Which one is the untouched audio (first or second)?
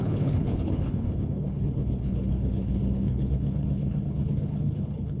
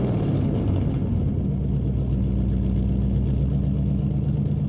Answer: second